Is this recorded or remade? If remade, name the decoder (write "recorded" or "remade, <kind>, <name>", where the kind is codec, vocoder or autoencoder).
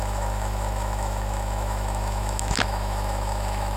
remade, autoencoder, DAC-VAE